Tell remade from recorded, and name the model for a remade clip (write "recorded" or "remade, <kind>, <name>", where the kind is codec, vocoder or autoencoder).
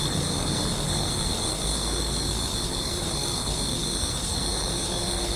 remade, codec, SNAC